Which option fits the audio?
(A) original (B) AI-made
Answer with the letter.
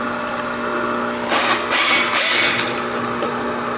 A